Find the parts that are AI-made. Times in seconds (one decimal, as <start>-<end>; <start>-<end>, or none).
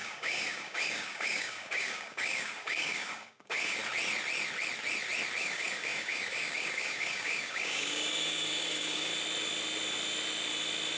0.0-3.8; 5.4-9.1